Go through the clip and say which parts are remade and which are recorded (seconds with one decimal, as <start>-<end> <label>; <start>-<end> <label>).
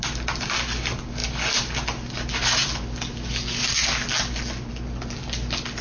0.0-5.8 recorded